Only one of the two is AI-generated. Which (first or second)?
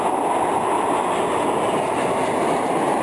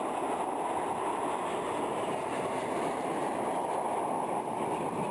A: second